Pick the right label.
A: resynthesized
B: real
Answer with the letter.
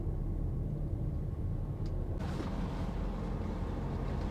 B